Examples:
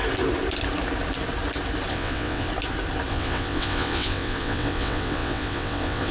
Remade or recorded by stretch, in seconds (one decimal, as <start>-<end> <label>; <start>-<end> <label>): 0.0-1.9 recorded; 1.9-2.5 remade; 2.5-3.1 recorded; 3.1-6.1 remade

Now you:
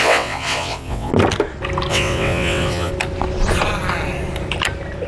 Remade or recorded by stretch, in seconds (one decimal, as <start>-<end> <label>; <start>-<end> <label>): 0.0-1.1 remade; 1.1-1.9 recorded; 1.9-2.9 remade; 2.9-5.1 recorded

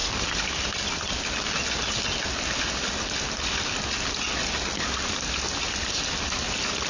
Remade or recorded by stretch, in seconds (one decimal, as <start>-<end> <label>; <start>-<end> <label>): 0.0-6.9 recorded

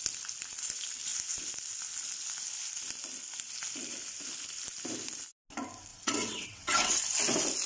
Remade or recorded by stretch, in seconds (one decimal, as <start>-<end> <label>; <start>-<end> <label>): 0.0-5.9 recorded; 5.9-7.0 remade; 7.0-7.7 recorded

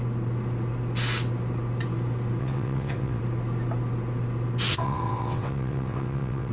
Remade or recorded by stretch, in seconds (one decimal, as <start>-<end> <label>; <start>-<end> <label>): 0.0-2.4 recorded; 2.4-3.2 remade; 3.2-4.7 recorded; 4.7-6.5 remade